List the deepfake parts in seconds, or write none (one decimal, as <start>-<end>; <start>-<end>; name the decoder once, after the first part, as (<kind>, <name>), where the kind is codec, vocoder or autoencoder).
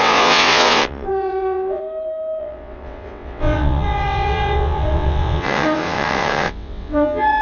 0.0-1.8 (vocoder, WaveNeXt); 2.4-7.4